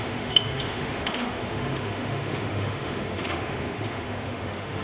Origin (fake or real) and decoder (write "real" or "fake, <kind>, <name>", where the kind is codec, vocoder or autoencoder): fake, autoencoder, DAC-VAE